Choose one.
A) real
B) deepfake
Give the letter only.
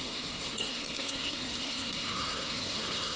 B